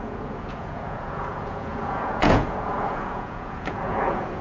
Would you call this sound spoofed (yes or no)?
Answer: yes